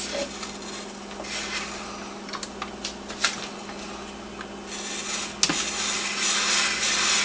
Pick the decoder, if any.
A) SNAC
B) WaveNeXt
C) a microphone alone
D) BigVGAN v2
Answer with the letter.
C